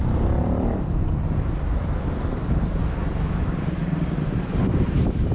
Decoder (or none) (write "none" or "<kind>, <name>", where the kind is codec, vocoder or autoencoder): none